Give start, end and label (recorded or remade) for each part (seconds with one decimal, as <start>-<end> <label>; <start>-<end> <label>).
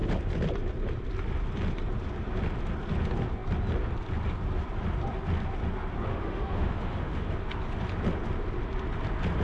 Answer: 0.0-6.1 recorded; 6.1-7.3 remade; 7.3-9.4 recorded